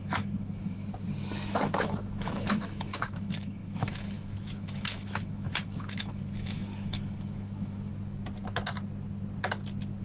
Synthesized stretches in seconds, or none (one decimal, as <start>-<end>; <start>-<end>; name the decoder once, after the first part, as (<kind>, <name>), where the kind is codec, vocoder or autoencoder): 0.0-0.8 (autoencoder, DAC-VAE); 1.5-7.9